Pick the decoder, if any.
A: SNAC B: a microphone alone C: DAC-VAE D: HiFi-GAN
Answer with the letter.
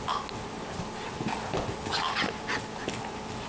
B